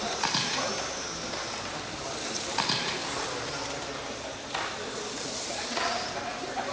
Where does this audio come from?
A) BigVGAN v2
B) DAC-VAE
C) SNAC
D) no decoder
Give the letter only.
D